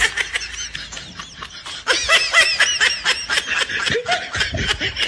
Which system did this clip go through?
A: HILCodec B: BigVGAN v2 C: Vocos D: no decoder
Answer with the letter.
D